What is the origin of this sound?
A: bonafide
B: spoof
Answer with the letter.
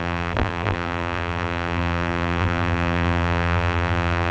B